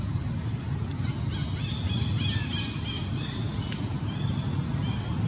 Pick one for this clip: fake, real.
real